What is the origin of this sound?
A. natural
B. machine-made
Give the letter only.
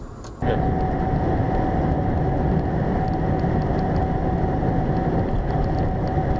A